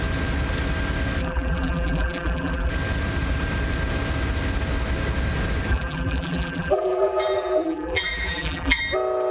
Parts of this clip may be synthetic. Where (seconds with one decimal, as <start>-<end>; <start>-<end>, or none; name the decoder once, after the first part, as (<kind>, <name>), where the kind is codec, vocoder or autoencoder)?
1.2-2.7 (vocoder, BigVGAN v2); 5.7-8.8